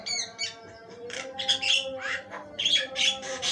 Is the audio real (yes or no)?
no